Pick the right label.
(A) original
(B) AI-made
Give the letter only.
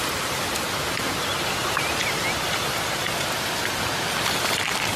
A